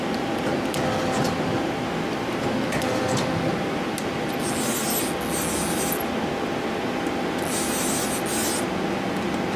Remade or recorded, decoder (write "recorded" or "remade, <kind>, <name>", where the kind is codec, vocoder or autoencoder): recorded